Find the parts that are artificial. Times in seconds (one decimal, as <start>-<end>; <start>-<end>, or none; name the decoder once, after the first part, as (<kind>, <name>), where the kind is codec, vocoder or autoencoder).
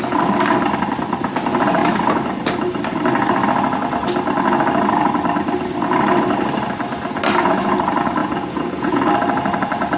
8.2-9.0 (vocoder, Vocos)